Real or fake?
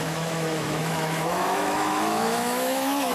fake